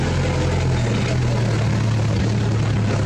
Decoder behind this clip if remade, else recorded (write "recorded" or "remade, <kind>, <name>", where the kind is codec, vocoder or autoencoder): recorded